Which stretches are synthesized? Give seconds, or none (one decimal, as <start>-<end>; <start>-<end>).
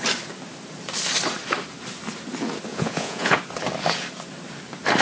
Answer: 2.7-3.4